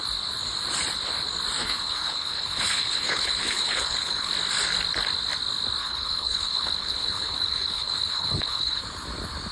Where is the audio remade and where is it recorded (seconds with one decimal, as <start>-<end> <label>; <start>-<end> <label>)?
0.0-1.6 recorded; 1.6-4.3 remade; 4.3-5.8 recorded; 5.8-8.8 remade; 8.8-9.5 recorded